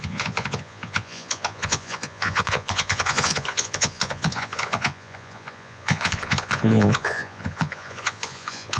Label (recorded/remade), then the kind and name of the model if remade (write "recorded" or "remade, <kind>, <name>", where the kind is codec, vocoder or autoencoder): remade, vocoder, Vocos